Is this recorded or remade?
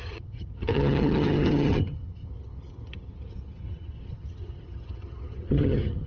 remade